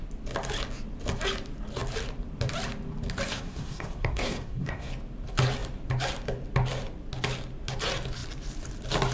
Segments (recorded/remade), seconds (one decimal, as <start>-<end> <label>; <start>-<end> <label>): 0.0-3.3 recorded; 3.3-4.9 remade; 4.9-9.1 recorded

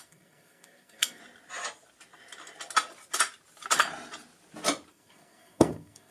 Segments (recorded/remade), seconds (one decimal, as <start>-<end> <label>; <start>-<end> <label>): 0.0-1.2 remade; 1.2-4.9 recorded; 4.9-6.1 remade

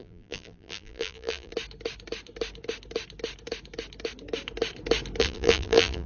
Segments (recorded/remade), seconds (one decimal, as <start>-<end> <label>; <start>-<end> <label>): 0.0-1.5 remade; 1.5-5.2 recorded; 5.2-6.1 remade

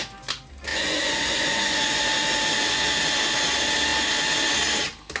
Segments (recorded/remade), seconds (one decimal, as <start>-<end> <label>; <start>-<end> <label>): 0.0-0.7 recorded; 0.7-2.0 remade; 2.0-5.2 recorded

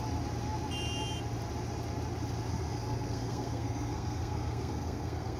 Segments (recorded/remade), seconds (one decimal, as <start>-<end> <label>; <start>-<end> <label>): 0.0-2.5 recorded; 2.5-5.4 remade

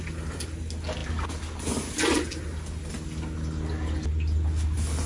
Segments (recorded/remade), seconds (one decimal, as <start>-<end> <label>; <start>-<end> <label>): 0.0-5.1 recorded

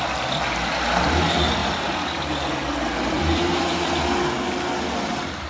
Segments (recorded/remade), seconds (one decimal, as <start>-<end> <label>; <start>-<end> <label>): 0.0-5.5 recorded

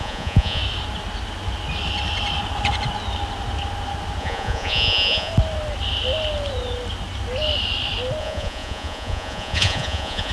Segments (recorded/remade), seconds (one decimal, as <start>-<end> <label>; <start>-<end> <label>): 0.0-0.6 remade; 0.6-4.2 recorded; 4.2-5.3 remade; 5.3-8.2 recorded; 8.2-10.3 remade